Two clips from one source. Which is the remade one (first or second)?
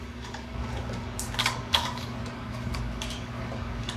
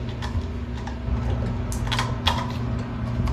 first